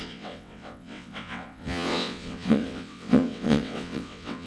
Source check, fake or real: fake